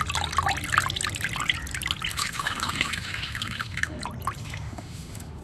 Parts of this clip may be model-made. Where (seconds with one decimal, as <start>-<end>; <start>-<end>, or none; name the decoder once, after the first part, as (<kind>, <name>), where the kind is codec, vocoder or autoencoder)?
2.1-4.0 (autoencoder, DAC-VAE); 4.4-5.4